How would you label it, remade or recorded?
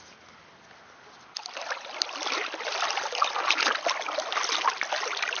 recorded